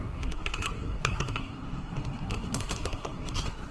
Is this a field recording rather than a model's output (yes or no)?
no